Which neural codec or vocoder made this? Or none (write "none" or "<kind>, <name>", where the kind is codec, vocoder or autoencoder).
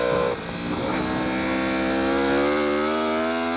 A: none